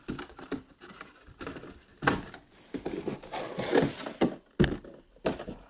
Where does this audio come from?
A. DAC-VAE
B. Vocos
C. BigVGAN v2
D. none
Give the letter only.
D